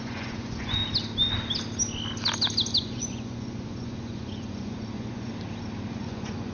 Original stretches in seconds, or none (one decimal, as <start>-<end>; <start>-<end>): 0.8-2.8; 5.3-5.9